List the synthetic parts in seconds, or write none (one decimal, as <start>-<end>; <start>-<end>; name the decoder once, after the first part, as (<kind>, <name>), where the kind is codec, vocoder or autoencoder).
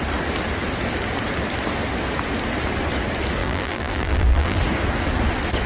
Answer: 3.4-4.6 (vocoder, BigVGAN v2)